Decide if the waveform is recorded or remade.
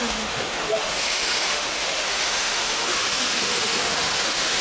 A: remade